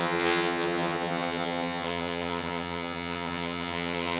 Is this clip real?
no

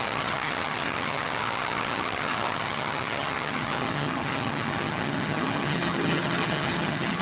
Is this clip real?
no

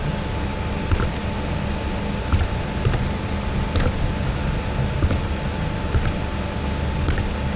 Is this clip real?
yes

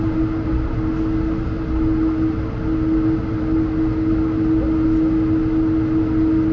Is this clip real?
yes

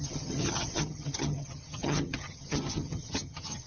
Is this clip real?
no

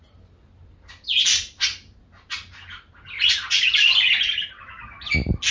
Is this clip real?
yes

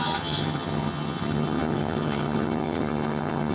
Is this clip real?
no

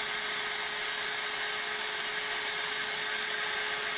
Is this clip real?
yes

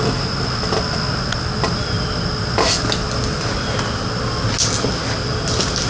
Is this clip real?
yes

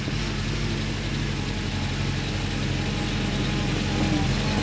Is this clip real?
yes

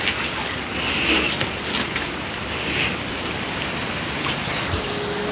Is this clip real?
yes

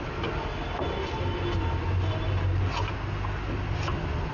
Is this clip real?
yes